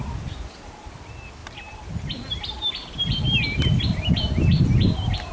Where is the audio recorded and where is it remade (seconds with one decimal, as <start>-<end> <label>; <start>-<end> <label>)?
0.0-5.3 recorded